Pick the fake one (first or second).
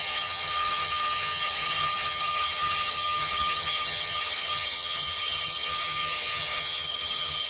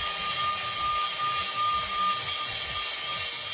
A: first